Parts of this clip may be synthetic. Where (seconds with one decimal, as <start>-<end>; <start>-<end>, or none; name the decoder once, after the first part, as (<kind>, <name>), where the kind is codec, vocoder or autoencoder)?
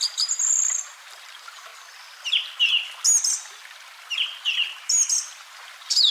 0.0-1.7 (vocoder, BigVGAN v2); 5.4-6.1